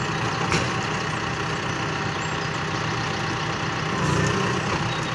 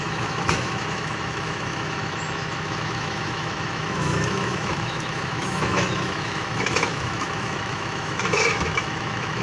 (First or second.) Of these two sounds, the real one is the first